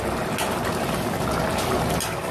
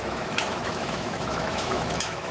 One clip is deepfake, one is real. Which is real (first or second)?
first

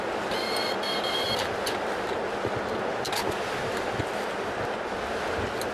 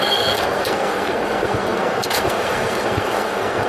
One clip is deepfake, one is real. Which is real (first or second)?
first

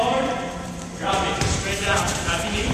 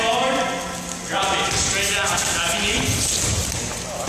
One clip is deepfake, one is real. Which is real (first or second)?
second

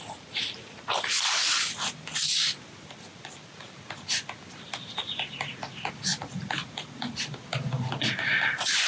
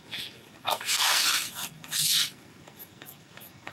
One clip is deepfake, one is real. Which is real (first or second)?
first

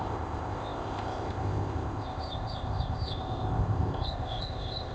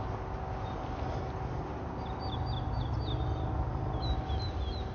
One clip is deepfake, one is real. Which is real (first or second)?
second